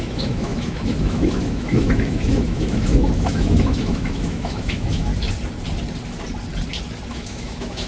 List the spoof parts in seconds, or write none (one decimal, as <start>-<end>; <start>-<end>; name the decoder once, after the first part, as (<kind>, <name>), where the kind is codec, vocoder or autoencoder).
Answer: 0.0-5.1 (autoencoder, DAC-VAE); 7.1-7.9